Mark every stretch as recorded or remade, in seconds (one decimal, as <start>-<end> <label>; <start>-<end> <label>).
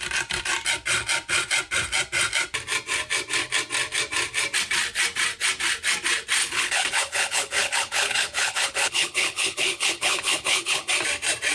0.0-6.4 recorded; 6.4-10.9 remade; 10.9-11.5 recorded